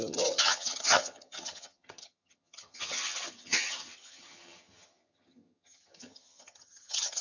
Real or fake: fake